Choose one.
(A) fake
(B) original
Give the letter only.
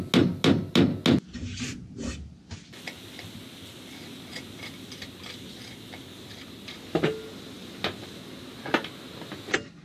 B